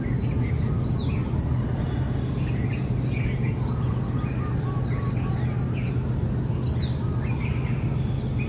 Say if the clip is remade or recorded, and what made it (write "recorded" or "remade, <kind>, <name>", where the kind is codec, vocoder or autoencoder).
recorded